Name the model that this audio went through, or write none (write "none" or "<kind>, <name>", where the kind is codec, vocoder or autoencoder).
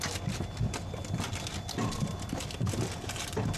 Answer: none